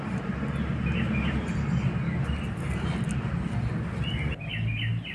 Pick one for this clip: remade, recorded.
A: recorded